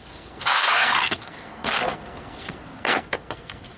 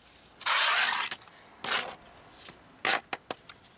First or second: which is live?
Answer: second